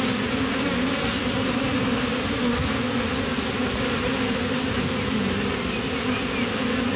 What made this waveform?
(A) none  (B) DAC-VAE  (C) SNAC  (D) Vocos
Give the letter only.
A